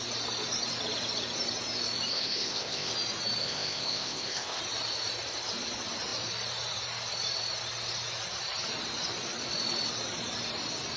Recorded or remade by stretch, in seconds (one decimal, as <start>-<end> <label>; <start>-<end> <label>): 0.0-2.1 recorded; 2.1-2.9 remade; 2.9-3.4 recorded; 3.4-4.6 remade; 4.6-11.0 recorded